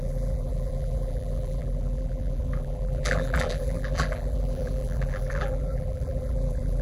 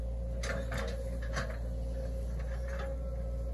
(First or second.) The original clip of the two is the second